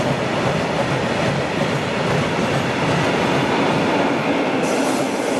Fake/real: real